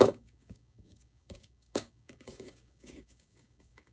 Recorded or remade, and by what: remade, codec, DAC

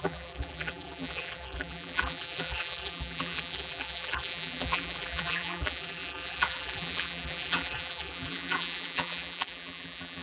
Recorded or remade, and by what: remade, vocoder, BigVGAN v2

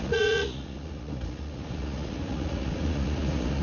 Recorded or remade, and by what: remade, vocoder, Vocos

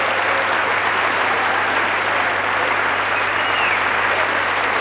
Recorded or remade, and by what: recorded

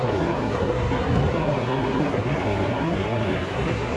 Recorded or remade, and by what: remade, codec, SNAC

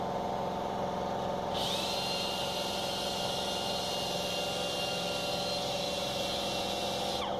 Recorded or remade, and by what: recorded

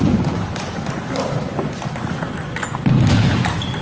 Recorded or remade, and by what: recorded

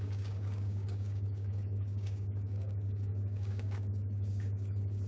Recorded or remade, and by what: remade, codec, DAC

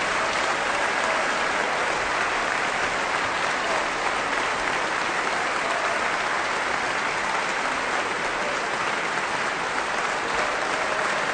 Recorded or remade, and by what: recorded